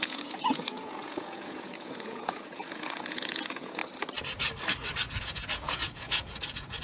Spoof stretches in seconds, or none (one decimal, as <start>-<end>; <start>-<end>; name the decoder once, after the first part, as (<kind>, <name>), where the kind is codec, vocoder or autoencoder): 0.0-3.8 (vocoder, Vocos); 5.2-6.8